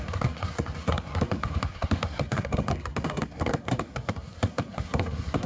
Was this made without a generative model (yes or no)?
no